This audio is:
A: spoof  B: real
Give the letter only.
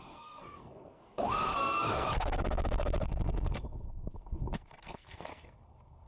A